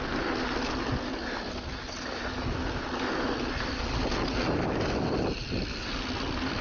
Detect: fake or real real